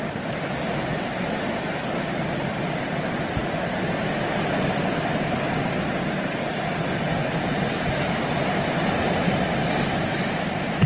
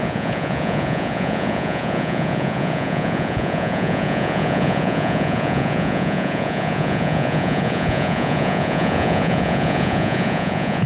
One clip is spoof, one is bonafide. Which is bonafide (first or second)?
first